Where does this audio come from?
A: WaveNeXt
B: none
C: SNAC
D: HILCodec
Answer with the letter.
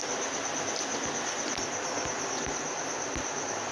B